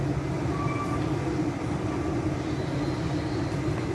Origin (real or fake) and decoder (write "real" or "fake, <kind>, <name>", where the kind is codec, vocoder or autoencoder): real